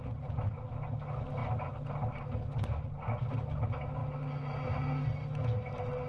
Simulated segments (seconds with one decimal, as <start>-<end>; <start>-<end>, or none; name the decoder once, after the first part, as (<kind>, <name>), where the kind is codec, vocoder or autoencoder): none